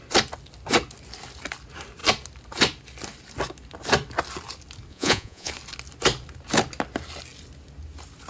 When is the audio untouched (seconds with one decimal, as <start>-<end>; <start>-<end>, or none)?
0.0-4.9; 5.5-8.3